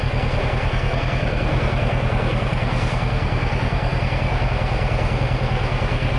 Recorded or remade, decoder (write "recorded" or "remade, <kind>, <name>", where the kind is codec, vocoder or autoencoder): remade, codec, SNAC